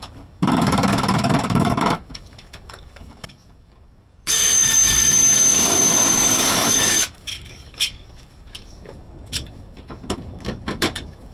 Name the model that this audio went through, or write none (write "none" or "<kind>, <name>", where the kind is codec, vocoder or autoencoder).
codec, DAC